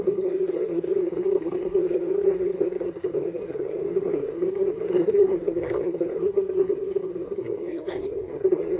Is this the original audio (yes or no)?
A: no